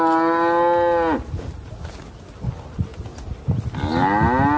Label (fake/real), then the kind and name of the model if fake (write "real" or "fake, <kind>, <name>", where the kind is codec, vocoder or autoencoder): real